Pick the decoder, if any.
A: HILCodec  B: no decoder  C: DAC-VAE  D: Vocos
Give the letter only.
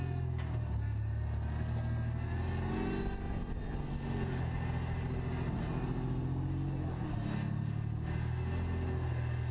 B